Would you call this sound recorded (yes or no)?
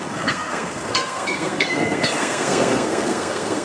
no